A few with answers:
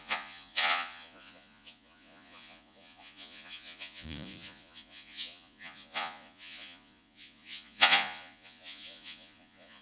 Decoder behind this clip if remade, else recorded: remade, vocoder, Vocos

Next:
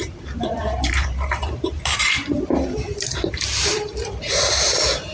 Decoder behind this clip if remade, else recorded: remade, vocoder, BigVGAN v2